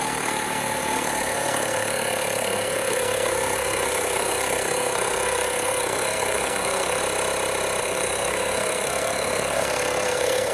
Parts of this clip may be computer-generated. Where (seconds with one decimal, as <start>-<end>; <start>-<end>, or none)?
0.0-7.0; 7.8-10.5